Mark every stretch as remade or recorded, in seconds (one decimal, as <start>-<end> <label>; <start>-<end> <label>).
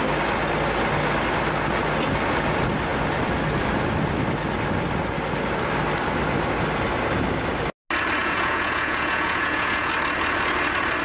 0.0-8.2 recorded; 8.2-9.9 remade; 9.9-11.0 recorded